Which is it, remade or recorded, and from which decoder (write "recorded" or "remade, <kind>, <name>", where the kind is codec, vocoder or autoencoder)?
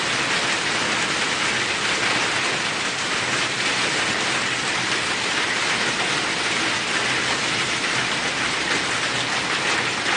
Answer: recorded